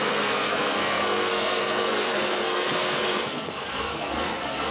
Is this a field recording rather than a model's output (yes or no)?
no